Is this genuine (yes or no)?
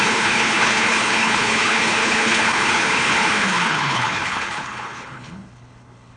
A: no